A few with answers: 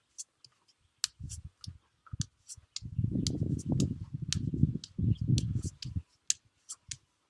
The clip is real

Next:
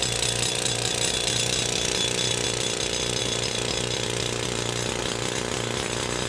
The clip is real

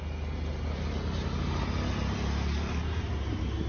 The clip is real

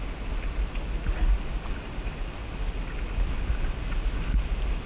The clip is real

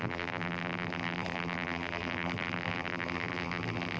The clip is fake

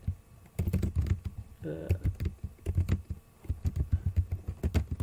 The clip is real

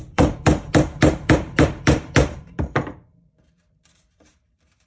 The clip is fake